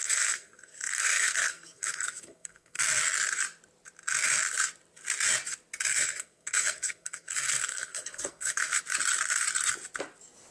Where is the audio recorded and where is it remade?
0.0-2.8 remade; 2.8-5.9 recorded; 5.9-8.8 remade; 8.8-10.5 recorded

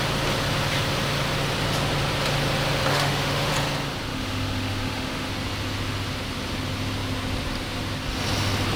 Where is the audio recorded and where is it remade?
0.0-2.9 recorded; 2.9-3.5 remade; 3.5-4.1 recorded; 4.1-5.3 remade; 5.3-8.8 recorded

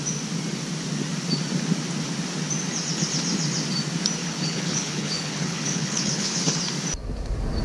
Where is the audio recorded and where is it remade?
0.0-4.2 recorded; 4.2-6.6 remade; 6.6-7.6 recorded

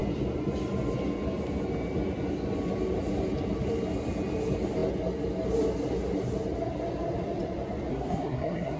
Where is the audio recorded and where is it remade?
0.0-7.9 recorded; 7.9-8.8 remade